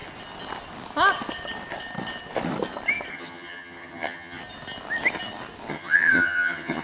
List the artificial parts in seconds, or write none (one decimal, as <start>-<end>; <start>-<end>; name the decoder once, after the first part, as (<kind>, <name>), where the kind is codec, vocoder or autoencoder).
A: 3.1-4.4 (vocoder, HiFi-GAN); 5.7-6.8

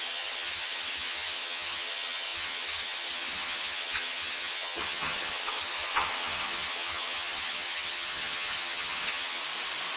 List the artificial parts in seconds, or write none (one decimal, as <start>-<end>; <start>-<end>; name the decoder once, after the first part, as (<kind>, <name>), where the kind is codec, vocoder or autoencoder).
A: 0.0-9.4 (vocoder, HiFi-GAN)

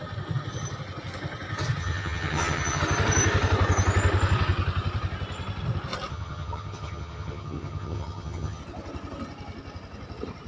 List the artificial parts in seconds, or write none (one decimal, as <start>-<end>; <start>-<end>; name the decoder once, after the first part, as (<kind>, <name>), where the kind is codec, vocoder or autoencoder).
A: 1.8-2.8 (vocoder, HiFi-GAN); 6.1-8.6

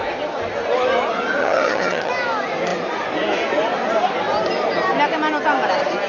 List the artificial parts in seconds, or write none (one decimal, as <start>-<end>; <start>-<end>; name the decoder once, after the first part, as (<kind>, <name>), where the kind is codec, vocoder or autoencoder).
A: 1.4-2.1 (vocoder, HiFi-GAN)

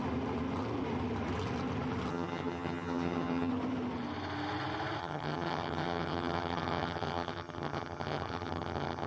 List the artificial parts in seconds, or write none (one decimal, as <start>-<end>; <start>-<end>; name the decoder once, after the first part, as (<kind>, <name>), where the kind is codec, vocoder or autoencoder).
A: 2.1-3.5 (vocoder, HiFi-GAN); 5.0-9.1

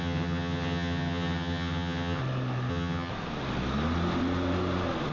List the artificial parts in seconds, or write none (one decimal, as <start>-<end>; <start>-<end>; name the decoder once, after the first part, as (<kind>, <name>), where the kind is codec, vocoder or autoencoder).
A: 0.0-2.2 (vocoder, HiFi-GAN); 2.7-3.1

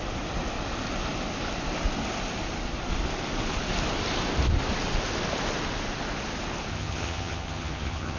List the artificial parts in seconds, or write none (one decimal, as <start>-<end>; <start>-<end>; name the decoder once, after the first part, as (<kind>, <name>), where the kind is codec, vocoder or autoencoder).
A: 6.7-8.2 (vocoder, HiFi-GAN)

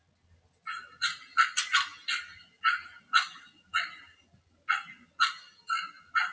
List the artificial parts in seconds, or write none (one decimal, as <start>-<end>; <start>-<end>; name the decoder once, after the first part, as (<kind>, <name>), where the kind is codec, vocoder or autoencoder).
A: none